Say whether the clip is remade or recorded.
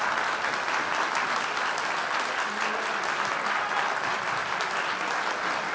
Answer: recorded